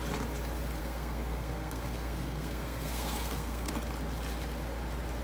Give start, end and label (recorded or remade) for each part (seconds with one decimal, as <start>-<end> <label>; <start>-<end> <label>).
0.0-0.8 recorded; 0.8-3.7 remade; 3.7-5.2 recorded